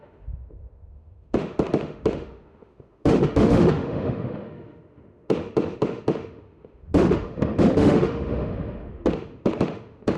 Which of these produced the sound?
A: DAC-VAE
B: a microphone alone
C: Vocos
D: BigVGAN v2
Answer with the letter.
A